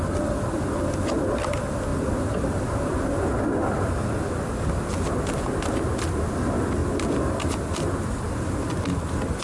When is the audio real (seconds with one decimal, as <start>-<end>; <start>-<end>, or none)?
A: 0.0-9.4